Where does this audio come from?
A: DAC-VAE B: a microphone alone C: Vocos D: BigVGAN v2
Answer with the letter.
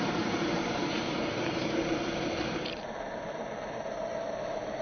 D